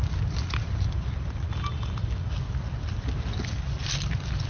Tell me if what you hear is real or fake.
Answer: real